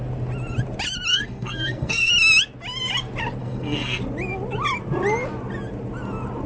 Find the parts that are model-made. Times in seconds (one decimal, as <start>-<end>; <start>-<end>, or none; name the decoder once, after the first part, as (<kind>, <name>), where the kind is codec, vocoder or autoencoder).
1.1-2.1 (codec, SNAC); 3.4-4.0